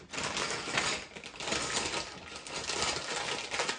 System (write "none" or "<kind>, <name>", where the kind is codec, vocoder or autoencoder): none